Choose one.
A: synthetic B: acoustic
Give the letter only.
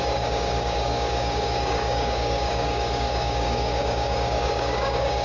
A